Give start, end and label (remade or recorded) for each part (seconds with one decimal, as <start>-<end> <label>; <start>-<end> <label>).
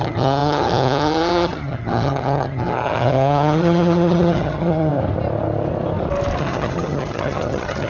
0.0-4.9 remade; 4.9-6.4 recorded; 6.4-7.9 remade